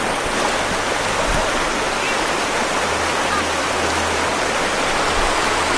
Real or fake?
real